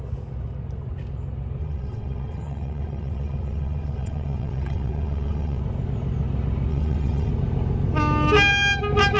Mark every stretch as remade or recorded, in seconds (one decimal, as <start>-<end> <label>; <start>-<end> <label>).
0.0-1.6 recorded; 1.6-5.6 remade; 5.6-6.7 recorded; 6.7-7.3 remade; 7.3-9.2 recorded